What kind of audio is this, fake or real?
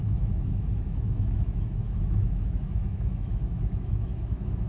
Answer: fake